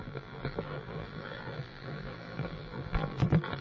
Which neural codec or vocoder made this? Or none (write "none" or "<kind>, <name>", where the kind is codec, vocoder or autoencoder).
vocoder, BigVGAN v2